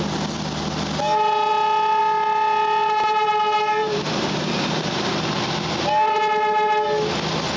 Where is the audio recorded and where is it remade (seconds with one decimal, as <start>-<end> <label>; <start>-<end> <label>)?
0.0-2.8 recorded; 2.8-3.4 remade; 3.4-3.8 recorded; 3.8-5.5 remade; 5.5-7.6 recorded